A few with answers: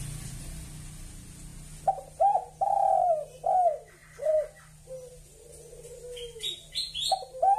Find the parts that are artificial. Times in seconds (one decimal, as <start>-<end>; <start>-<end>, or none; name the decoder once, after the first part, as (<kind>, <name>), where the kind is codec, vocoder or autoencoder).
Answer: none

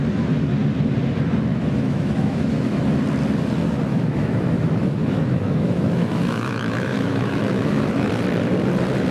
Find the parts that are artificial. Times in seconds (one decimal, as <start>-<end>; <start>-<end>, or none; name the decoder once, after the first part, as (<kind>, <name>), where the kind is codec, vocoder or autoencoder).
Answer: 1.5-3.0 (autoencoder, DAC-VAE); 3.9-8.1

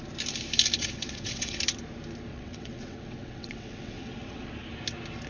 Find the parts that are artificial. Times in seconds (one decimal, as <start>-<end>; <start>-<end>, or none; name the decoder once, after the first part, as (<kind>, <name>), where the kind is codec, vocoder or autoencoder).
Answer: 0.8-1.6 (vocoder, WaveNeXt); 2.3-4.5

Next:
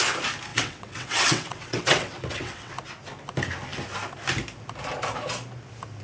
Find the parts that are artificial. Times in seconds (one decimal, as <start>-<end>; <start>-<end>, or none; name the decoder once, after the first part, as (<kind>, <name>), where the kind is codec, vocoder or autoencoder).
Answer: 0.5-2.7 (vocoder, WaveNeXt)

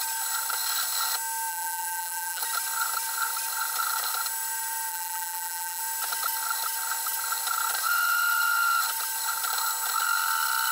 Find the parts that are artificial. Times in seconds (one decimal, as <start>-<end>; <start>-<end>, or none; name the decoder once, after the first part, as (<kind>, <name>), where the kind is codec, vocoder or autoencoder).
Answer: 1.5-2.4 (vocoder, BigVGAN v2); 4.9-5.8

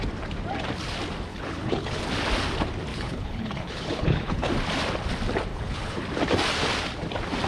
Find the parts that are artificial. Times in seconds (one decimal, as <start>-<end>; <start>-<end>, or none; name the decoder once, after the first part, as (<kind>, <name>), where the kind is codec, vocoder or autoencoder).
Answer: 1.3-2.0 (codec, HILCodec); 2.9-4.5; 5.5-6.0

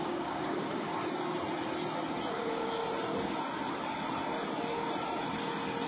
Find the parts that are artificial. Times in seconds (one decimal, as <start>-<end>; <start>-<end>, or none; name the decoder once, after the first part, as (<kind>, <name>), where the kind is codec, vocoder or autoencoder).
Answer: 0.0-0.9 (codec, DAC); 2.3-2.8

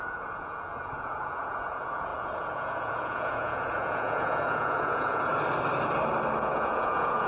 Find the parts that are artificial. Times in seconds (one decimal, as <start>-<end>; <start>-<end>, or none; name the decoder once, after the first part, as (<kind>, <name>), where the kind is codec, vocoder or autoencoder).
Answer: 0.0-5.3 (vocoder, Vocos); 6.4-7.3